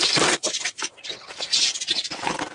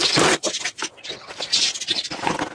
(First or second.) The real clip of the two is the second